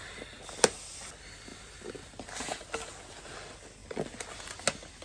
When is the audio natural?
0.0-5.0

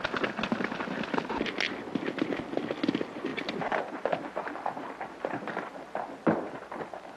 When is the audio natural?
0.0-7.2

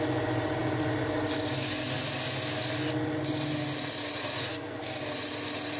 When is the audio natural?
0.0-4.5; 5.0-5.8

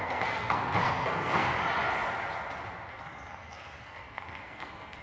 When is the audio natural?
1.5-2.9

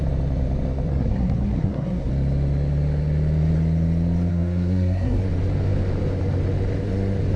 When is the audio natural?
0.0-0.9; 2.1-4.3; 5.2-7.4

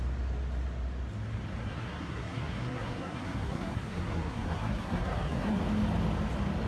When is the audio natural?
0.0-1.6; 5.6-6.7

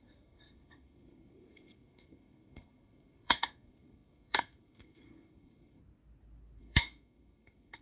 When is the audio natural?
5.8-6.6